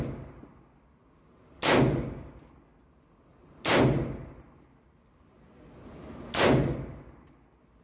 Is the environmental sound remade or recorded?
recorded